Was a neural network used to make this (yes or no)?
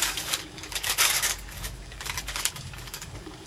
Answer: yes